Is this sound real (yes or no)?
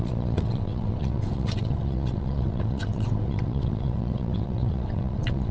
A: no